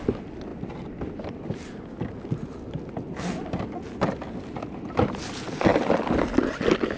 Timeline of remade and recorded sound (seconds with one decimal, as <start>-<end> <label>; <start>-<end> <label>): 0.0-7.0 recorded